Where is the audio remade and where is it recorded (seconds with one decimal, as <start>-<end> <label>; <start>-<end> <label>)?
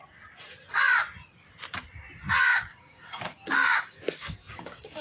0.0-2.5 recorded; 2.5-5.0 remade